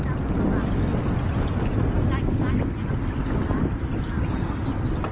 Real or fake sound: real